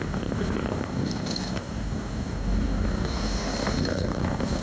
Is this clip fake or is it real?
fake